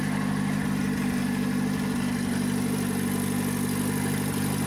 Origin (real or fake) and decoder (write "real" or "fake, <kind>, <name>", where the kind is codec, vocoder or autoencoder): real